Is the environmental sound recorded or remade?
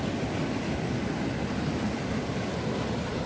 recorded